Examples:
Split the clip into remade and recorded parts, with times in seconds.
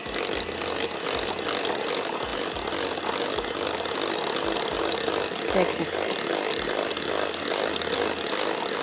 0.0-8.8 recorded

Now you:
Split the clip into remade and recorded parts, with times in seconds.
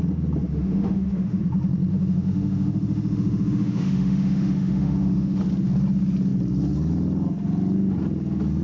0.0-0.5 recorded; 0.5-1.4 remade; 1.4-1.9 recorded; 1.9-5.4 remade; 5.4-8.6 recorded